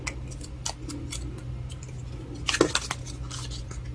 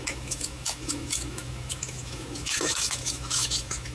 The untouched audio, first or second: first